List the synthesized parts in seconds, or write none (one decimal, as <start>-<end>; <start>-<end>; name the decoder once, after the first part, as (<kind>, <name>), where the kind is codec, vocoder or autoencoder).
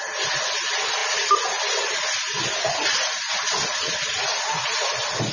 none